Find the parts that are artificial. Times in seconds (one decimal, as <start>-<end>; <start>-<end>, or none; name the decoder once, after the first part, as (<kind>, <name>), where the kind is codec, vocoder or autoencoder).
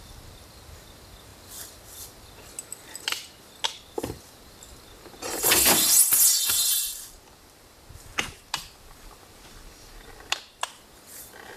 none